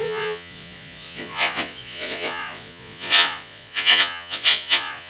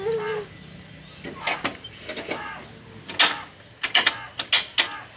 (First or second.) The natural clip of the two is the second